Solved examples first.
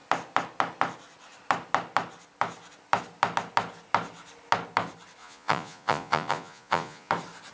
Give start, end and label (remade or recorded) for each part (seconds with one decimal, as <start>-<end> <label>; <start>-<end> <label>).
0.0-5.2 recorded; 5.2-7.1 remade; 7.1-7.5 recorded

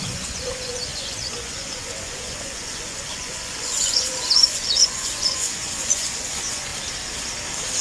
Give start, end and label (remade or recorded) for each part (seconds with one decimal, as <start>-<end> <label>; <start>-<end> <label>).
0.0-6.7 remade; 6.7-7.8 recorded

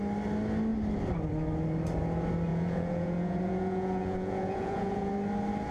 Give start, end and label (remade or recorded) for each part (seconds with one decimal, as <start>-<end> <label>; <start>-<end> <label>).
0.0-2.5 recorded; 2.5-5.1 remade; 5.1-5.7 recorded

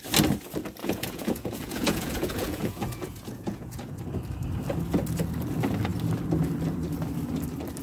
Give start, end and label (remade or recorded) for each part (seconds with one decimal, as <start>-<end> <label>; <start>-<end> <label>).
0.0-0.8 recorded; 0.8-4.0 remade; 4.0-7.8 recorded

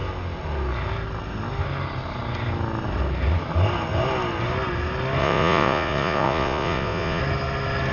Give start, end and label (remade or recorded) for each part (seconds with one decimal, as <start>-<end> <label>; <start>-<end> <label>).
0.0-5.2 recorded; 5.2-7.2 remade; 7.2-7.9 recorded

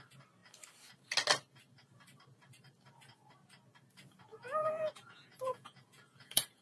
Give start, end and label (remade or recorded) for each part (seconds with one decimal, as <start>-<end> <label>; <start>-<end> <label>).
0.0-4.3 recorded; 4.3-6.6 remade

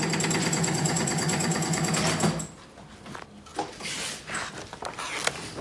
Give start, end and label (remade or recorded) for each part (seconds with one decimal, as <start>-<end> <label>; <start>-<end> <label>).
0.0-0.4 recorded; 0.4-1.9 remade; 1.9-5.6 recorded

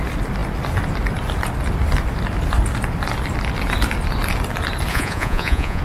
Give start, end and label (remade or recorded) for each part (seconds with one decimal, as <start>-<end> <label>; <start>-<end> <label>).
0.0-4.9 recorded; 4.9-5.8 remade